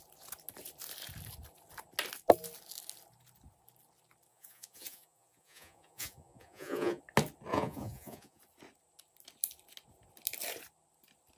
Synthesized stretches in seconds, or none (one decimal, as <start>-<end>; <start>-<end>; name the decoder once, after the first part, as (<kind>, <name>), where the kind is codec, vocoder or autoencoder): 4.3-7.0 (vocoder, Vocos); 7.5-8.4